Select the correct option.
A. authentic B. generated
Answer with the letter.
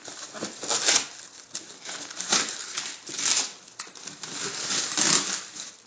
A